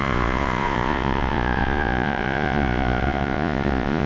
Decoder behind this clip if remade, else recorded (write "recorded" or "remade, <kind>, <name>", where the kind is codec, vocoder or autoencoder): remade, vocoder, Vocos